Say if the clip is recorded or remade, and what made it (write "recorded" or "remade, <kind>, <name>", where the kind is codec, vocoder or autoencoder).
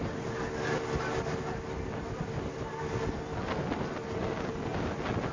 recorded